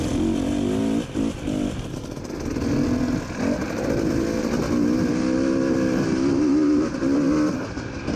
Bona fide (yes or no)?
yes